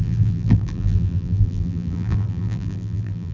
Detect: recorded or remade remade